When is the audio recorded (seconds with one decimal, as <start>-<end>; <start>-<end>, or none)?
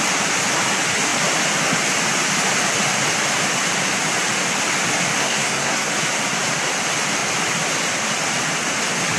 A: 0.0-5.2; 5.9-9.2